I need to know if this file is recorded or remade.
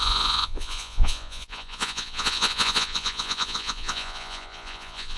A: remade